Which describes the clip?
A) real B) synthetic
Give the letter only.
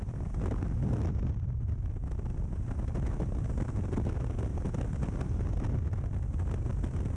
A